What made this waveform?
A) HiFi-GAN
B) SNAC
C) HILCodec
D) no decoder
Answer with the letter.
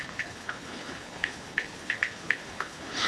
C